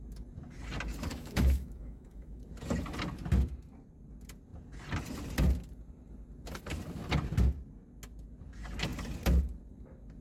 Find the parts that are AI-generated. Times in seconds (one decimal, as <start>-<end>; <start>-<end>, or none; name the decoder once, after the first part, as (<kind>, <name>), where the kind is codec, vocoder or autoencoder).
1.1-2.4 (autoencoder, DAC-VAE)

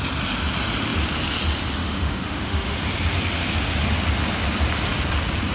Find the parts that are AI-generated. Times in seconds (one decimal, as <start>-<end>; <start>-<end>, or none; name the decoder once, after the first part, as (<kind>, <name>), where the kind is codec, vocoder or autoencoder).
1.8-2.8 (autoencoder, DAC-VAE)

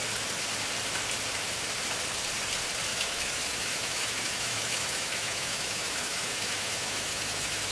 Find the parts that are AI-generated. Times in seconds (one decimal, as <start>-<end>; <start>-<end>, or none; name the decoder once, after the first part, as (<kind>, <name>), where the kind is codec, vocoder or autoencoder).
2.9-7.7 (autoencoder, DAC-VAE)

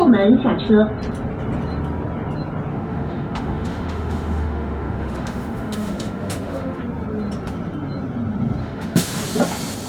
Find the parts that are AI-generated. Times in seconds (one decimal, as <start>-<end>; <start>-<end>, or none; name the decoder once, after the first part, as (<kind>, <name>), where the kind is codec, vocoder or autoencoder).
2.7-6.8 (autoencoder, DAC-VAE); 8.6-9.2